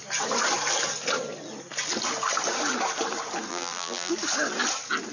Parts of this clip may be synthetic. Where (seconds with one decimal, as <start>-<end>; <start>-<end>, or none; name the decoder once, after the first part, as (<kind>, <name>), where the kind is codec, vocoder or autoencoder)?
3.5-4.1 (vocoder, BigVGAN v2)